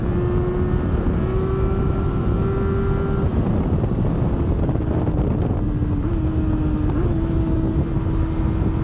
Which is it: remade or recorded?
recorded